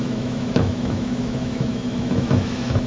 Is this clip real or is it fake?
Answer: fake